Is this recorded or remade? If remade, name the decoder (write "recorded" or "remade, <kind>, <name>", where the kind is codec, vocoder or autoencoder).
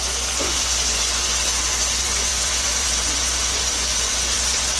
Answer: remade, vocoder, Vocos